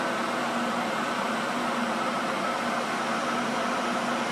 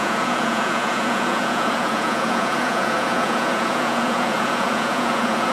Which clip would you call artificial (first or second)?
second